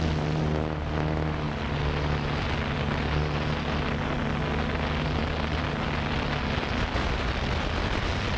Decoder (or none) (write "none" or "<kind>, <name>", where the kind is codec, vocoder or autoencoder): none